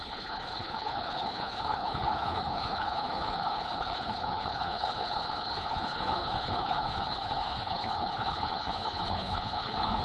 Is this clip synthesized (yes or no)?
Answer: yes